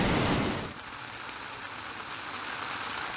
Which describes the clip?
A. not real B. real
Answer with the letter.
B